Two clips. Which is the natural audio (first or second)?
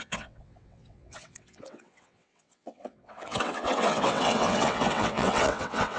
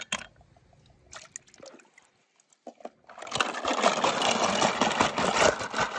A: second